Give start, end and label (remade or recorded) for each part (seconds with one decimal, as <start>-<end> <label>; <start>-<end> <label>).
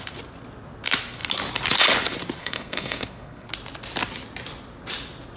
0.0-2.4 recorded; 2.4-3.5 remade; 3.5-5.4 recorded